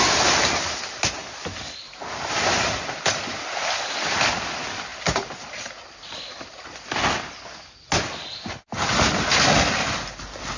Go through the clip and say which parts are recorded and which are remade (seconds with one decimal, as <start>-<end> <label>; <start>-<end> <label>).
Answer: 0.0-10.6 recorded

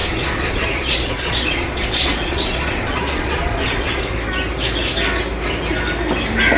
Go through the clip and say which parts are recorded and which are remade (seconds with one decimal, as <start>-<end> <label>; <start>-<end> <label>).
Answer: 0.0-4.0 remade; 4.0-6.6 recorded

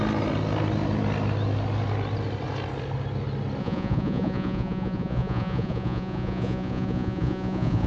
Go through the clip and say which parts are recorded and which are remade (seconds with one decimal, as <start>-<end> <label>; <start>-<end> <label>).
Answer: 0.0-3.6 recorded; 3.6-7.9 remade